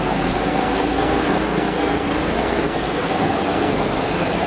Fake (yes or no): yes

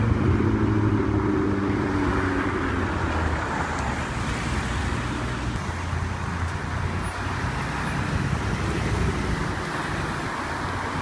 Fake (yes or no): no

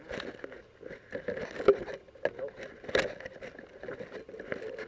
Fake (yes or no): no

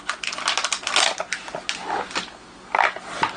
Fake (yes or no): no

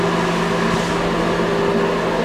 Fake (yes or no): no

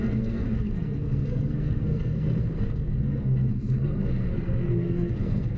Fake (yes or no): yes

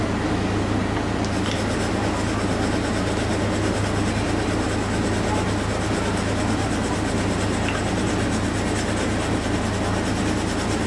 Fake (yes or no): no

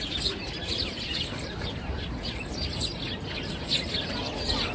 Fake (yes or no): no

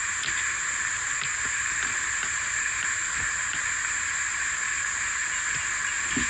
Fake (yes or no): no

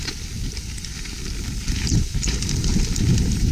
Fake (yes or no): no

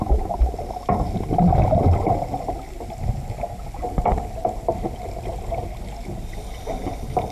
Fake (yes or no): no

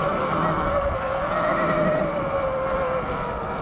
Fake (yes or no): no